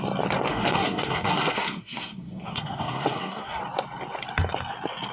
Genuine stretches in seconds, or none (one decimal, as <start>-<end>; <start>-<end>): 0.0-0.5; 3.6-5.1